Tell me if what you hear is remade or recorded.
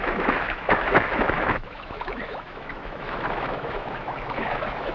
remade